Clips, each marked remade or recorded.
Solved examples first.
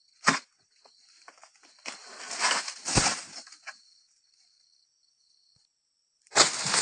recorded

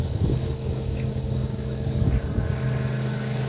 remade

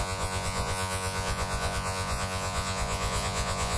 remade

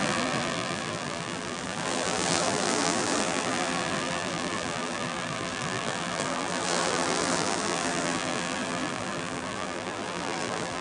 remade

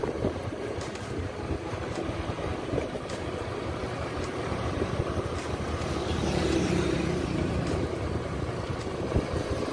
remade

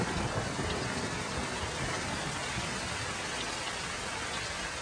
recorded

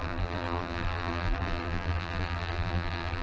remade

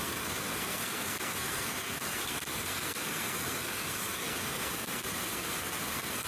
remade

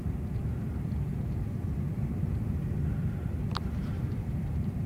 remade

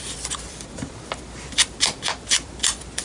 remade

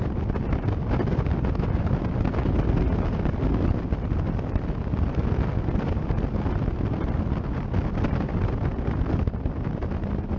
recorded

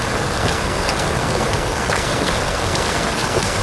remade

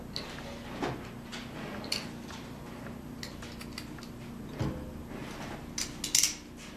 recorded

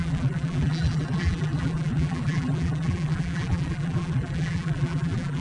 remade